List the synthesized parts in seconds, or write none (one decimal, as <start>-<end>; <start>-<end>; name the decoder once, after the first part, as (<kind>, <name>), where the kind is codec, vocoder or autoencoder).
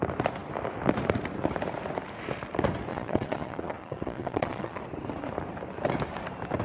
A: 2.9-4.8 (vocoder, Vocos)